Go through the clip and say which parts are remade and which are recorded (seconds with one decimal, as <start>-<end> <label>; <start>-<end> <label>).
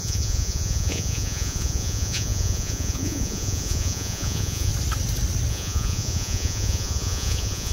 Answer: 0.0-4.7 remade; 4.7-5.5 recorded; 5.5-7.7 remade